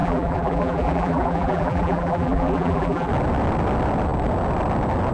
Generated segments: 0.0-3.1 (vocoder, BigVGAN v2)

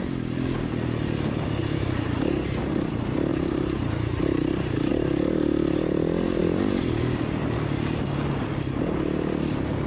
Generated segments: 1.6-2.2 (vocoder, BigVGAN v2); 3.3-4.9

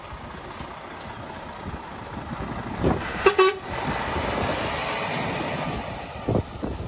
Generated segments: 1.9-4.5 (vocoder, BigVGAN v2)

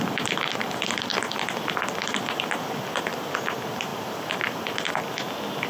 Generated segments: 3.9-4.9 (vocoder, BigVGAN v2)

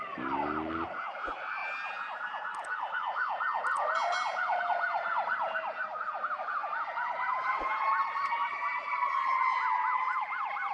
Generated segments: 0.0-1.6 (vocoder, BigVGAN v2); 4.6-10.7

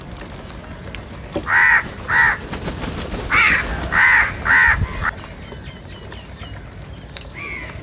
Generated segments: 1.6-2.1 (vocoder, BigVGAN v2)

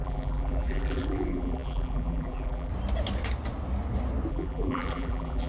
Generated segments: 0.0-2.7 (vocoder, BigVGAN v2); 4.3-5.5

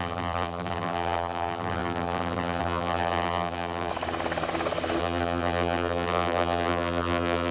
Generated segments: 0.0-3.9 (vocoder, BigVGAN v2); 5.0-7.5